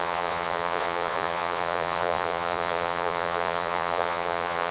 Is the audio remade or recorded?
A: remade